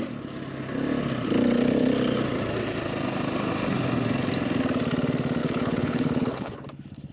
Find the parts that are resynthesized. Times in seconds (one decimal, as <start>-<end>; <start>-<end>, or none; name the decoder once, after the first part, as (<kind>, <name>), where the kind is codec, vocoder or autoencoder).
5.4-7.1 (codec, HILCodec)